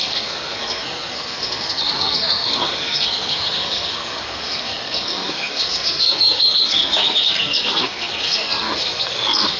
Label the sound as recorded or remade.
remade